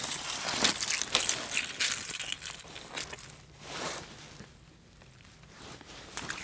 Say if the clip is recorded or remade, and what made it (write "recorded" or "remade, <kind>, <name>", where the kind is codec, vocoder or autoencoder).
recorded